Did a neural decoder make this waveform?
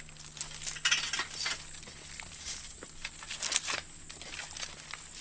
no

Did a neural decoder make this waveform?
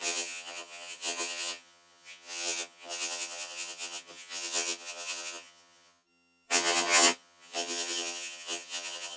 yes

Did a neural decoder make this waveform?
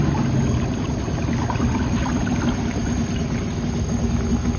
no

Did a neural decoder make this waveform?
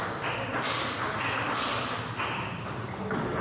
no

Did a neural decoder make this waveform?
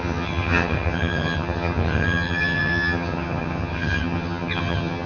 yes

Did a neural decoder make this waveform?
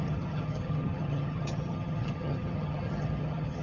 yes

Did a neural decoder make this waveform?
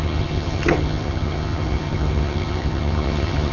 yes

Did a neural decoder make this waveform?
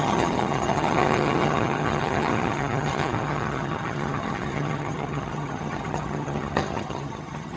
yes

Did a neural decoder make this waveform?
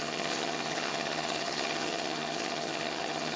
yes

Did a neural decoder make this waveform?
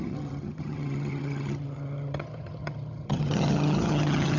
yes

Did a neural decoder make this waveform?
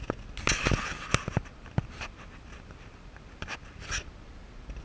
no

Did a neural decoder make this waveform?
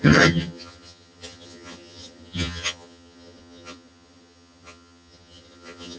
yes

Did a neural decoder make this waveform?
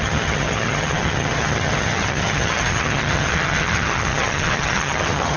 yes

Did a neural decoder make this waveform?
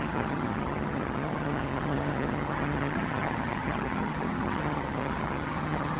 yes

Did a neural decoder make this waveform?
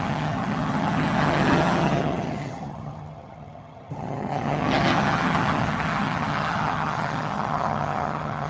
yes